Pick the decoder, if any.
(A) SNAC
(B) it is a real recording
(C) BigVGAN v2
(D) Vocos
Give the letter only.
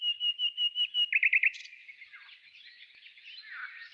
B